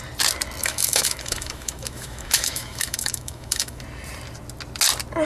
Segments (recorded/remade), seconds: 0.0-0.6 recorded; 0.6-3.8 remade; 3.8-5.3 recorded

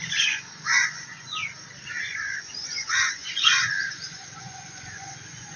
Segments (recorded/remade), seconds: 0.0-1.4 remade; 1.4-2.0 recorded; 2.0-5.6 remade

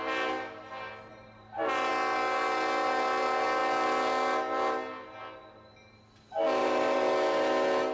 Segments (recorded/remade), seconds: 0.0-1.1 recorded; 1.1-1.9 remade; 1.9-6.6 recorded; 6.6-7.1 remade; 7.1-7.9 recorded

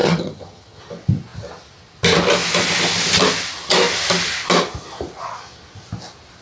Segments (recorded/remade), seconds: 0.0-0.8 remade; 0.8-6.4 recorded

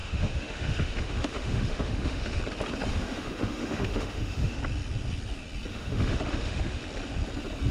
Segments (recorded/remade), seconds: 0.0-2.4 remade; 2.4-2.9 recorded; 2.9-4.6 remade; 4.6-5.7 recorded; 5.7-6.8 remade; 6.8-7.7 recorded

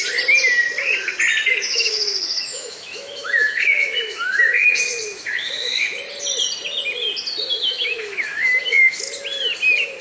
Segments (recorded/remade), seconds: 0.0-1.5 recorded; 1.5-6.0 remade; 6.0-7.5 recorded; 7.5-9.0 remade; 9.0-10.0 recorded

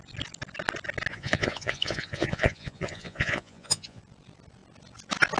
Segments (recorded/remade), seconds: 0.0-1.1 recorded; 1.1-4.0 remade; 4.0-5.4 recorded

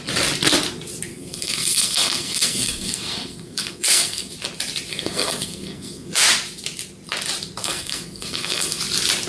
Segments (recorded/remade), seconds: 0.0-1.1 recorded; 1.1-4.3 remade; 4.3-4.9 recorded; 4.9-6.2 remade; 6.2-7.6 recorded; 7.6-8.8 remade; 8.8-9.3 recorded